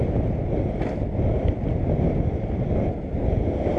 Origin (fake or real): real